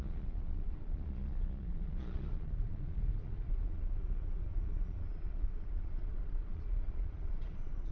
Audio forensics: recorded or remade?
remade